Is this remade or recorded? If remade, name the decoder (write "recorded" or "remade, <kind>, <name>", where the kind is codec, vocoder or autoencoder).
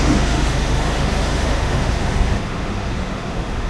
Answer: remade, autoencoder, DAC-VAE